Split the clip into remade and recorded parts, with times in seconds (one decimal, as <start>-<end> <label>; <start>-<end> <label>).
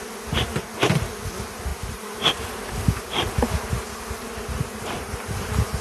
0.0-1.7 recorded; 1.7-2.7 remade; 2.7-4.3 recorded; 4.3-5.8 remade